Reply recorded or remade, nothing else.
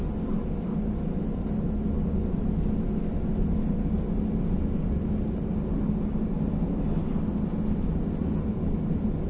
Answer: recorded